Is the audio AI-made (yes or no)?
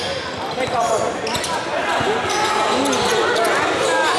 no